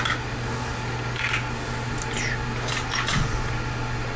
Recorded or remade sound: recorded